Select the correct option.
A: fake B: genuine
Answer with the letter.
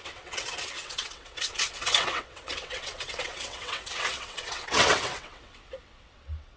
A